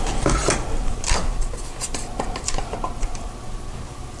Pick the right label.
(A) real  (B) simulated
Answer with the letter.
A